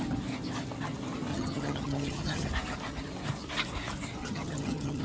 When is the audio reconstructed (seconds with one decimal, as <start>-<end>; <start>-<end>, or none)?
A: 1.3-2.5; 4.2-5.0